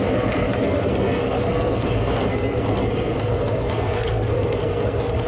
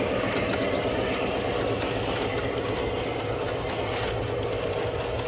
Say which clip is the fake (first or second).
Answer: first